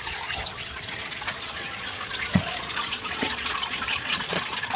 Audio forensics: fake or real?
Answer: fake